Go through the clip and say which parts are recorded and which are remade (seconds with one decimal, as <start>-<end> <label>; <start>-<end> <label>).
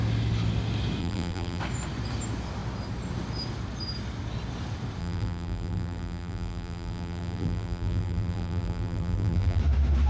0.0-1.0 recorded; 1.0-1.6 remade; 1.6-5.0 recorded; 5.0-9.6 remade; 9.6-10.1 recorded